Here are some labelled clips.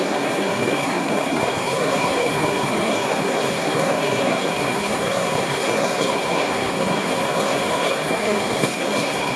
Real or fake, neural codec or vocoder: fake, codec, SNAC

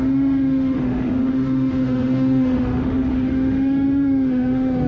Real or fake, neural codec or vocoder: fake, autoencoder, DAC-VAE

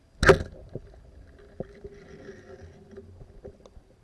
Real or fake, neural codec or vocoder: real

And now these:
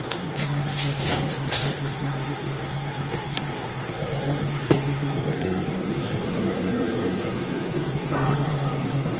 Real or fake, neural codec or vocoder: fake, codec, SNAC